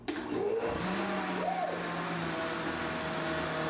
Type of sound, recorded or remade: recorded